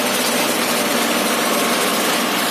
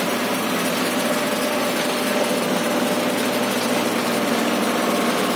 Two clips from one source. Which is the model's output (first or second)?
first